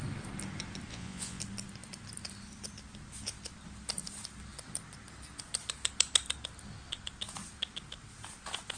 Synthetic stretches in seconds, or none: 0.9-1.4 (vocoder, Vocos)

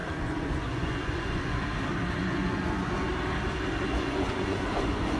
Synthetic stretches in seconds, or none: 0.0-1.6 (vocoder, Vocos); 2.2-3.1; 3.8-5.2

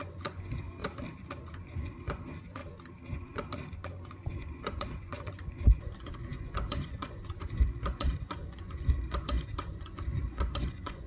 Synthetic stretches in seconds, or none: 0.0-0.8 (vocoder, Vocos); 1.4-2.6; 3.1-11.1

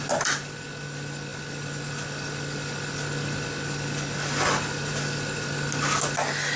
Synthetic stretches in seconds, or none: none